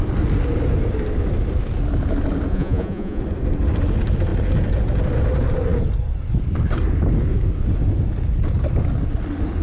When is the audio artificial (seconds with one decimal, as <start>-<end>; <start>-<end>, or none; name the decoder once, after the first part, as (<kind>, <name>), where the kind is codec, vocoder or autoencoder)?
2.5-3.2 (vocoder, Vocos)